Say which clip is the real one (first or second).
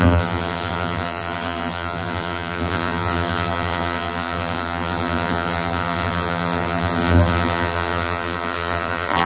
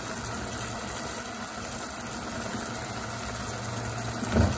second